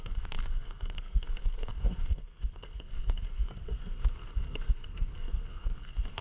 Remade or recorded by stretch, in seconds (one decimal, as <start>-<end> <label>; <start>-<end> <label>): 0.0-6.2 remade